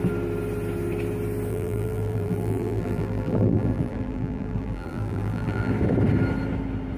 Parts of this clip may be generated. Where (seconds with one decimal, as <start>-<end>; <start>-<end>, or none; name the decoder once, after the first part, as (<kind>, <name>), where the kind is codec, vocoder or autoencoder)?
1.5-5.7 (vocoder, BigVGAN v2)